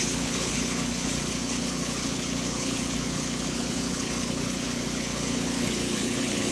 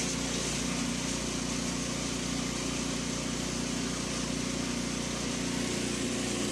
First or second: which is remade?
first